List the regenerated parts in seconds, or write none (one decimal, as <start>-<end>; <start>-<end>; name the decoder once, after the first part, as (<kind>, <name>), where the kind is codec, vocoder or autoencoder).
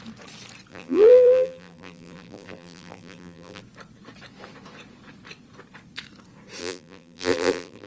0.7-3.6 (vocoder, BigVGAN v2); 6.6-7.9